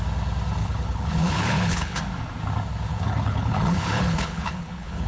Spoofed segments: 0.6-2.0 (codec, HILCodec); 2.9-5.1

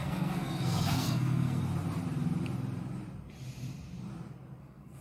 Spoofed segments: 0.0-1.6 (codec, SNAC); 4.6-5.0

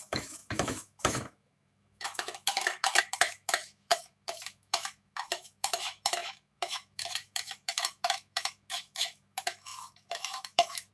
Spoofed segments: 0.0-10.9 (autoencoder, DAC-VAE)

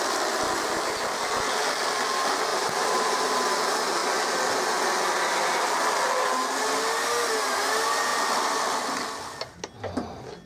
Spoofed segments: 2.5-3.4 (vocoder, BigVGAN v2)

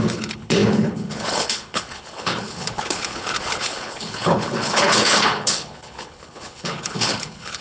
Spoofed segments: 0.0-7.6 (codec, HILCodec)